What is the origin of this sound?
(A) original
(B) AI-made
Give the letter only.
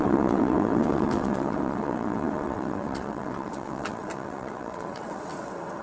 B